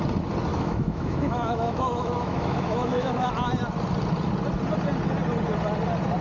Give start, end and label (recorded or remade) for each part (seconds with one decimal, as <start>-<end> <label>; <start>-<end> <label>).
0.0-0.5 recorded; 0.5-3.3 remade; 3.3-6.2 recorded